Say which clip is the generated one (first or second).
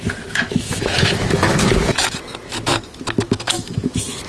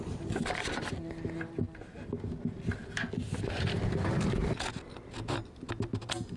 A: first